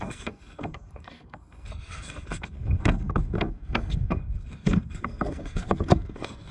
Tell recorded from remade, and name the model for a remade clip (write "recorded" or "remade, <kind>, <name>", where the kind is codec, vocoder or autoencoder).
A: remade, codec, SNAC